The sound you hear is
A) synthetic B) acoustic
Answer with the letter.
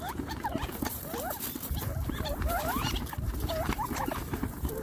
A